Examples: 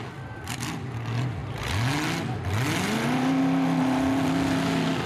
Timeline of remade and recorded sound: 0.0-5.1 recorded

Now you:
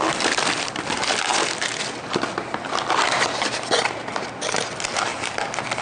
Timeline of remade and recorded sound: 0.0-5.1 remade; 5.1-5.8 recorded

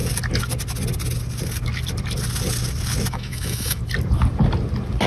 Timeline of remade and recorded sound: 0.0-3.1 recorded; 3.1-3.8 remade; 3.8-5.1 recorded

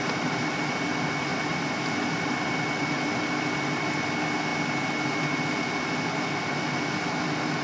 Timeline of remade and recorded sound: 0.0-1.3 recorded; 1.3-3.2 remade; 3.2-7.6 recorded

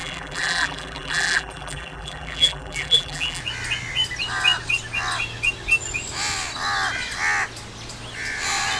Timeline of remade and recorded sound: 0.0-3.4 remade; 3.4-8.8 recorded